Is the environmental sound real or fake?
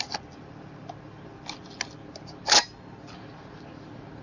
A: real